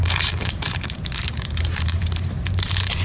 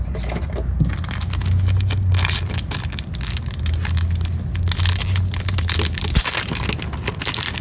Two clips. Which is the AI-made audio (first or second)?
first